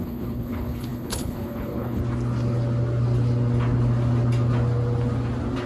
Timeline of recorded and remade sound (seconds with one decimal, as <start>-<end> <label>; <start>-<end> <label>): 0.0-2.0 remade; 2.0-5.7 recorded